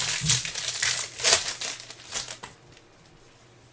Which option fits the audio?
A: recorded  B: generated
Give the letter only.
A